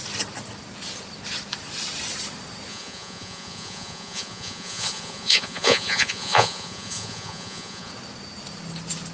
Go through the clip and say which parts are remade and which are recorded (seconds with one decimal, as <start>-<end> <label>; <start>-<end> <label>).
0.0-2.7 recorded; 2.7-7.9 remade; 7.9-9.1 recorded